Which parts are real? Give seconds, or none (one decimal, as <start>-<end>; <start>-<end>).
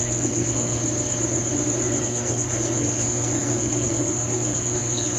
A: 0.8-2.0